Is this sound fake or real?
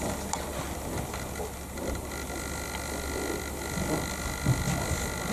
real